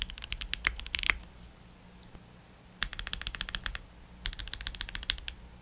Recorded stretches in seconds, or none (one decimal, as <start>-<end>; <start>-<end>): 0.0-5.6

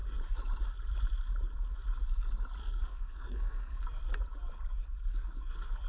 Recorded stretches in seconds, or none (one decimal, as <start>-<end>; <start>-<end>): 0.0-2.6; 3.8-5.9

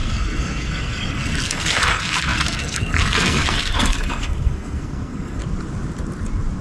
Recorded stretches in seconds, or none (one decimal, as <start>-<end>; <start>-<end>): 5.4-6.6

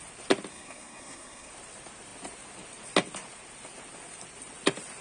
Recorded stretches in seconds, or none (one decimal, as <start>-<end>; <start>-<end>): 0.0-0.5; 1.5-5.0

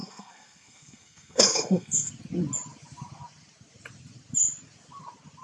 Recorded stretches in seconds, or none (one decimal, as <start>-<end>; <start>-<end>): 2.1-5.4

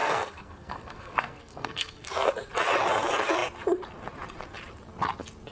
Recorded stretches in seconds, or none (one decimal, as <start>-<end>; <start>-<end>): 2.3-5.5